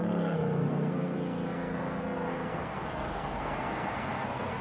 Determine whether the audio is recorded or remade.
remade